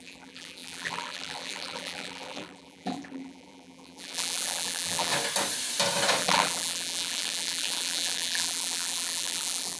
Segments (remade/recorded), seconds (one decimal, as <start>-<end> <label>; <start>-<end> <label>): 0.0-5.1 remade; 5.1-6.2 recorded; 6.2-9.8 remade